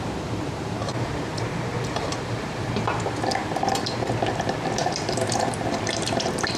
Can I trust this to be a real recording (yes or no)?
no